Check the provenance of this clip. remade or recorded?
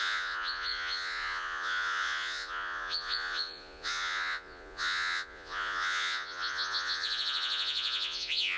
remade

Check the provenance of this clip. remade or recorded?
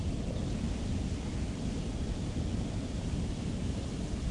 recorded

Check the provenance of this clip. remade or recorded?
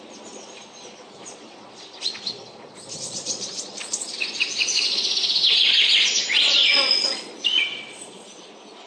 remade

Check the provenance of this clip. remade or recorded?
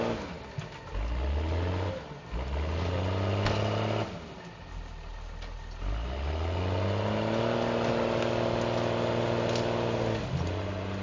recorded